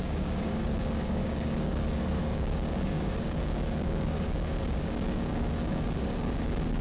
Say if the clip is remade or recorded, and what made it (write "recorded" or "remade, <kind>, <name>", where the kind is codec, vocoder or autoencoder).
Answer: remade, codec, DAC